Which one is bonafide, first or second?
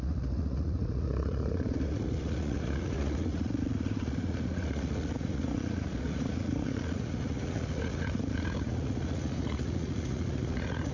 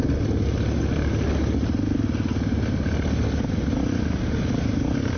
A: second